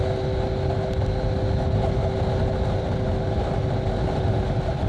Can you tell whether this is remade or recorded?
recorded